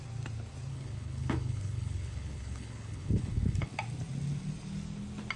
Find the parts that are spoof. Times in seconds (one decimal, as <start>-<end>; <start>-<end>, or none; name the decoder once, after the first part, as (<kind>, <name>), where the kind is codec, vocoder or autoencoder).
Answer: 0.7-3.7 (codec, HILCodec)